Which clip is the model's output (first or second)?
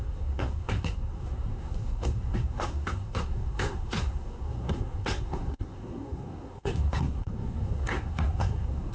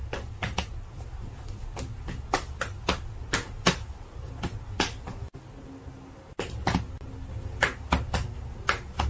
first